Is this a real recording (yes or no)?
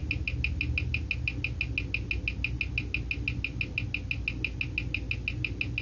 yes